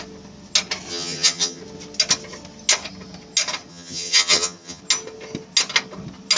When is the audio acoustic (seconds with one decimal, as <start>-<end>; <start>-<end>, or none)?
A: 0.0-0.9; 1.6-3.7; 4.8-6.4